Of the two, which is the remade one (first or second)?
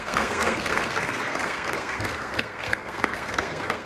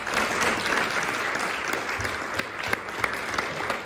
first